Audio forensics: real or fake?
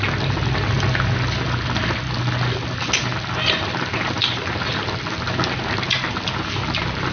real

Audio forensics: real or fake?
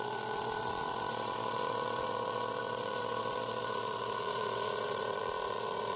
fake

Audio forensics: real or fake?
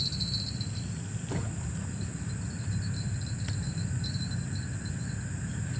real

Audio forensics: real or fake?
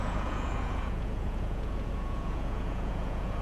fake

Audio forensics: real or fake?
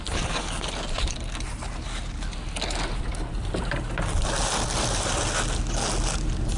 real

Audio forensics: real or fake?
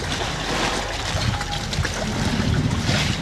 real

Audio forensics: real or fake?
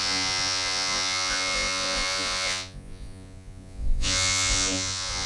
fake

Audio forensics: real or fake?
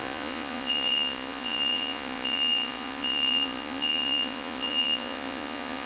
fake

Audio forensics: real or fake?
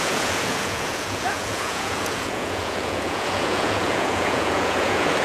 fake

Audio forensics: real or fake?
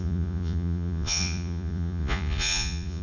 fake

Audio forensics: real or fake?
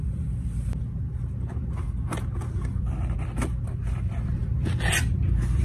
real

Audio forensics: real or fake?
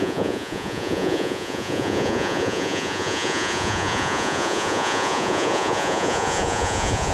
fake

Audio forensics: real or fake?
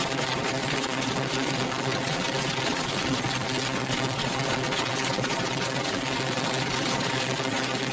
fake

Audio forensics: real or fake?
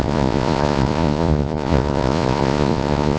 fake